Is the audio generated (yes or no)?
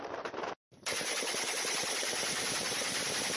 no